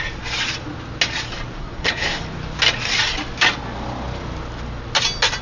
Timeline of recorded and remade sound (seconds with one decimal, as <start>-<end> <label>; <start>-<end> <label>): 0.0-1.6 recorded; 1.6-2.2 remade; 2.2-5.4 recorded